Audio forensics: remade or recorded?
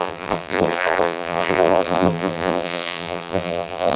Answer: remade